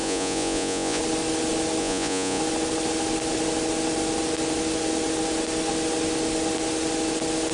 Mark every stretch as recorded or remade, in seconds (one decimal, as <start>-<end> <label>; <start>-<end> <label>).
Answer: 0.0-1.0 remade; 1.0-1.8 recorded; 1.8-2.4 remade; 2.4-7.5 recorded